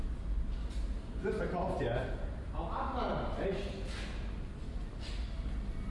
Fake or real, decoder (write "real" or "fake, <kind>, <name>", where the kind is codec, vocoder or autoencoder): real